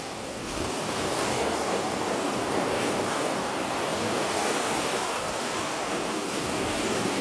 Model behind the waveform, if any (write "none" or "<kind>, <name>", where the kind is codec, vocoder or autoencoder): codec, DAC